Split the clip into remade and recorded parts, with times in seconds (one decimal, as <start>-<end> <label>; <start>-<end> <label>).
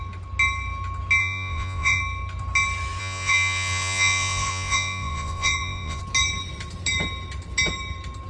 0.0-1.2 recorded; 1.2-2.0 remade; 2.0-3.0 recorded; 3.0-6.0 remade; 6.0-8.3 recorded